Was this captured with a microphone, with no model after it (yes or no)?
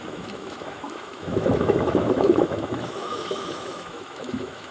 no